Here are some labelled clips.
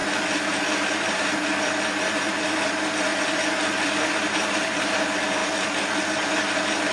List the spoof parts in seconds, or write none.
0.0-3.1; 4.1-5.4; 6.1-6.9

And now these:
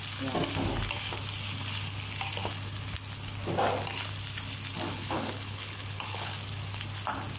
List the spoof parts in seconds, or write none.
4.9-6.3

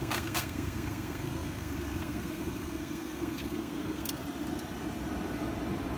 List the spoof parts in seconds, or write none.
0.0-4.2

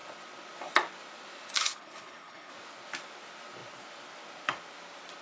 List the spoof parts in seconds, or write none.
1.6-2.5